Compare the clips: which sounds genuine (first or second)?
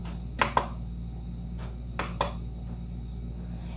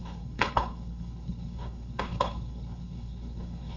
first